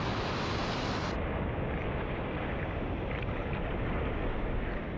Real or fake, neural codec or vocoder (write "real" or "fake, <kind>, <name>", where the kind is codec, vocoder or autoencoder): real